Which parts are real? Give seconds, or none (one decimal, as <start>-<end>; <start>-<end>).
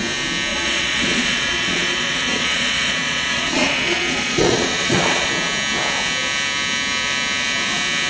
0.0-0.5; 5.3-8.1